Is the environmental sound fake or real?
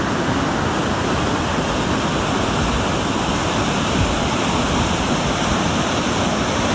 real